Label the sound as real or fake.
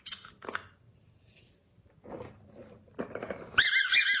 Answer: real